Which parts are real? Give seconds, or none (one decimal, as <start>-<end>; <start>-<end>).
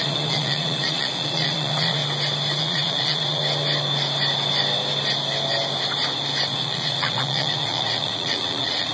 2.0-2.6; 3.4-6.5